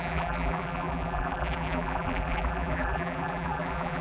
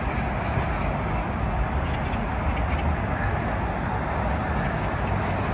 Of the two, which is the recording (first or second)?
second